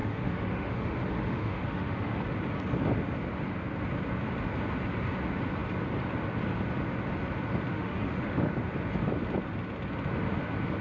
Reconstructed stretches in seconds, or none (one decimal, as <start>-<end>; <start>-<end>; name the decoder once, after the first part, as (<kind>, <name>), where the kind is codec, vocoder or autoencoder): 0.0-2.2 (autoencoder, DAC-VAE); 7.7-8.5